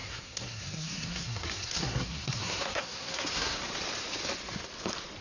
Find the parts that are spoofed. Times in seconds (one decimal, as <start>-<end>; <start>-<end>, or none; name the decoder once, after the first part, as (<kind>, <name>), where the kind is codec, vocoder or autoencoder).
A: 0.0-3.6 (codec, SNAC)